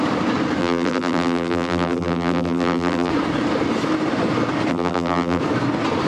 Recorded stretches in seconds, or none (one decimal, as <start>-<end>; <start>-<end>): 0.0-0.6; 3.1-4.7; 5.4-6.1